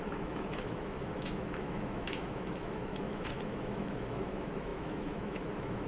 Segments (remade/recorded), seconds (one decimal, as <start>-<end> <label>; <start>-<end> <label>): 0.0-5.9 remade